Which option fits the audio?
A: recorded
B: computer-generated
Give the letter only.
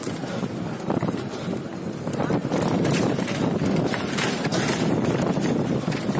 A